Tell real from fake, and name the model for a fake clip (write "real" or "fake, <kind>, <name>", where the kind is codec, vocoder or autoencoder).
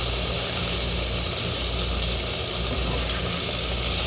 real